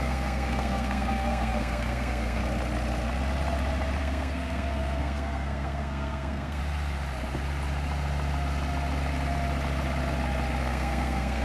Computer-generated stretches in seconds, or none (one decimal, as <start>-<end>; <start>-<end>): 0.0-2.4; 4.0-6.6; 10.6-11.4